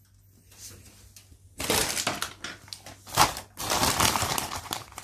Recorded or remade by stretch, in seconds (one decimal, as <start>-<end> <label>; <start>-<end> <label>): 0.0-1.8 recorded; 1.8-2.5 remade; 2.5-3.8 recorded; 3.8-4.6 remade; 4.6-5.0 recorded